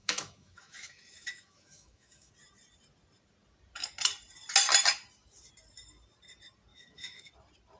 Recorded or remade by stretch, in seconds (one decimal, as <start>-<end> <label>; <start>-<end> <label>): 0.0-2.3 remade; 2.3-6.7 recorded; 6.7-7.3 remade; 7.3-7.8 recorded